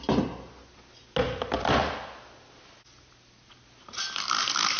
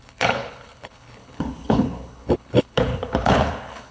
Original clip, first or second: first